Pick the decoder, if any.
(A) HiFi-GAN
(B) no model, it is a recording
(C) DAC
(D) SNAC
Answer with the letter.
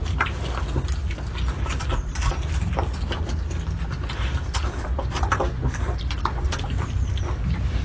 B